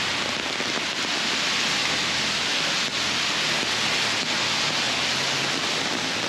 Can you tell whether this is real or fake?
real